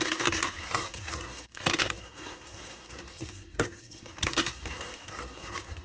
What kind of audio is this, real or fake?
fake